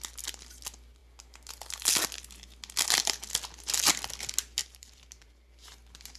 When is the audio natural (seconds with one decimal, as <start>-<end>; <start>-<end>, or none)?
0.0-4.6; 5.5-6.2